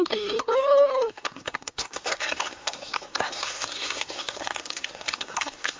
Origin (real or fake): fake